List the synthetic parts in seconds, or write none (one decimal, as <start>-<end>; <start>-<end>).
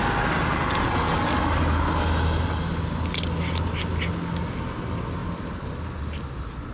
none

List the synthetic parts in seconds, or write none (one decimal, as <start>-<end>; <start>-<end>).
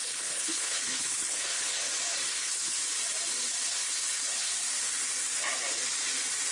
0.0-1.8; 2.3-2.8; 3.7-4.5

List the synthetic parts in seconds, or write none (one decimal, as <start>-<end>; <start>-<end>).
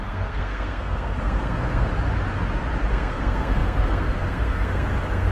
0.0-1.9; 2.9-5.3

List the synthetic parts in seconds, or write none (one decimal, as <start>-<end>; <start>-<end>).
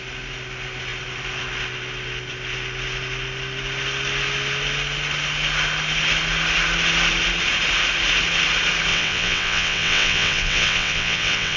8.9-11.6